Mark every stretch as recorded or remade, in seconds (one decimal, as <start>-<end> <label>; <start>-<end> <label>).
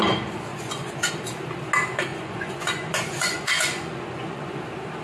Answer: 0.0-0.5 recorded; 0.5-1.1 remade; 1.1-2.1 recorded; 2.1-4.6 remade; 4.6-5.0 recorded